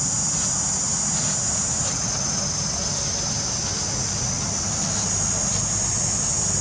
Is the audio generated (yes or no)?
no